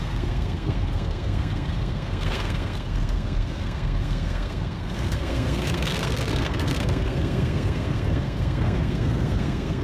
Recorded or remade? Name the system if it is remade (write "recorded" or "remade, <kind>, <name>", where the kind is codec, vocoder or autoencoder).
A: remade, codec, SNAC